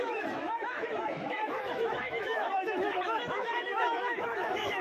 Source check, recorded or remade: remade